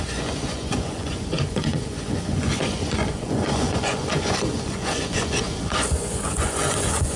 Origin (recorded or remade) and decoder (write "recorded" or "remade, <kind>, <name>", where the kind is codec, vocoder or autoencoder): remade, vocoder, Vocos